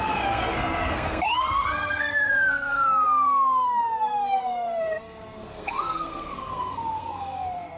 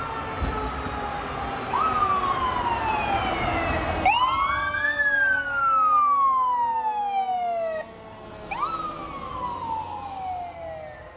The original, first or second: second